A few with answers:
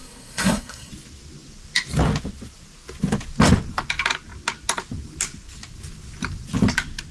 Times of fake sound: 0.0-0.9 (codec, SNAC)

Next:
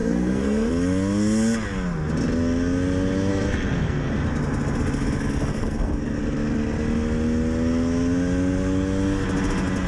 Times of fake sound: 0.0-0.7 (codec, SNAC); 3.3-4.1; 5.5-6.2

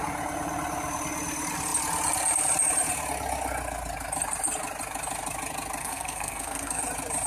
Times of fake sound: 5.8-6.8 (codec, SNAC)

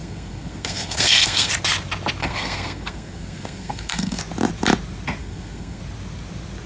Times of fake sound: 0.0-1.5 (codec, SNAC); 2.2-4.2; 5.2-5.8

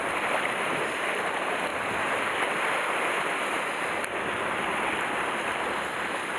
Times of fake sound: none

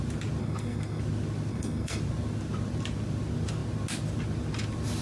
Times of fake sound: 0.4-1.0 (codec, SNAC); 1.5-2.0

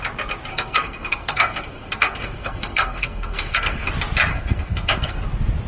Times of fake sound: 0.5-3.9 (codec, SNAC); 4.3-5.2

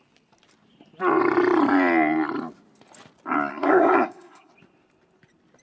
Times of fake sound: 3.5-4.5 (codec, SNAC)